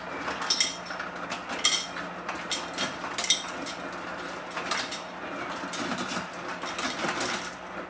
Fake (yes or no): no